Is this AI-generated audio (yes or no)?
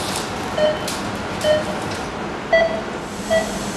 no